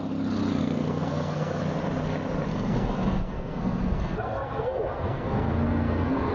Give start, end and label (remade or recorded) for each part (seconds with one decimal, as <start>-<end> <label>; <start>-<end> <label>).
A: 0.0-0.6 recorded; 0.6-1.6 remade; 1.6-2.5 recorded; 2.5-6.3 remade

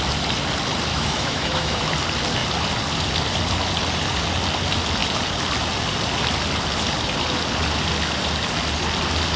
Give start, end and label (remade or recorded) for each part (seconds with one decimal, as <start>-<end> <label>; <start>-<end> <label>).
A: 0.0-0.9 recorded; 0.9-1.9 remade; 1.9-9.4 recorded

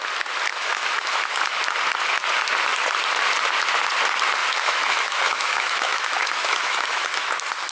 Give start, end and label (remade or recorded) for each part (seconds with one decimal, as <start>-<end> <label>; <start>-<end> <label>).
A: 0.0-0.5 recorded; 0.5-1.4 remade; 1.4-4.4 recorded; 4.4-7.3 remade; 7.3-7.7 recorded

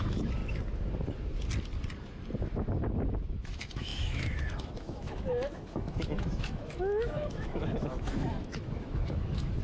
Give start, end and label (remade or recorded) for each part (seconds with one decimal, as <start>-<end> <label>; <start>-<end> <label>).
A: 0.0-0.4 remade; 0.4-3.3 recorded; 3.3-9.6 remade

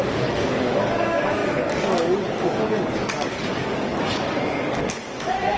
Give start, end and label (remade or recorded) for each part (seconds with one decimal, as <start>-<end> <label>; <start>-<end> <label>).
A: 0.0-5.6 remade

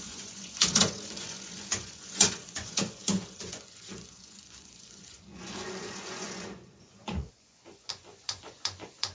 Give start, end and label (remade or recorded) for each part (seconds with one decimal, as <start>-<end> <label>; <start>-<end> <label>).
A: 0.0-9.1 remade

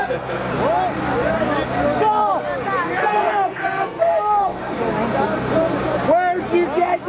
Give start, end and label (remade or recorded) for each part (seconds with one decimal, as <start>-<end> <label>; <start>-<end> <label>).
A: 0.0-0.5 remade; 0.5-3.0 recorded; 3.0-4.8 remade; 4.8-7.1 recorded